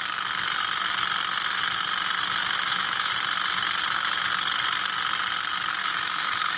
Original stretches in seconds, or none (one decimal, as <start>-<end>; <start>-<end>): 0.0-2.4; 3.1-5.8